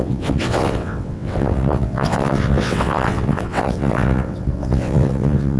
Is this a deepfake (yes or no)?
yes